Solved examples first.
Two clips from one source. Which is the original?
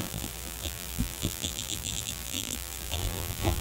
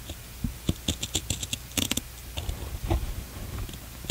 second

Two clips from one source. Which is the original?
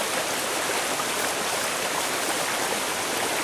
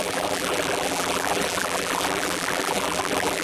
first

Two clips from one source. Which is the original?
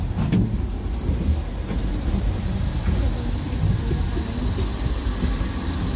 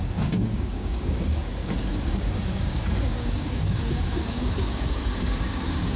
first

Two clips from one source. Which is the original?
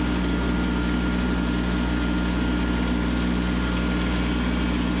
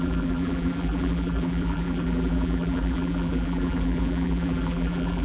first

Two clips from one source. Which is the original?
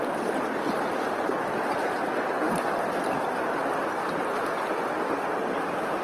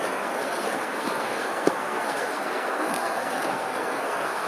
first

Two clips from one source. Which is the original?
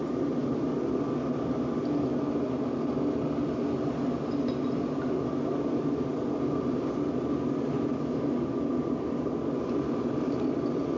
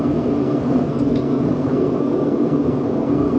first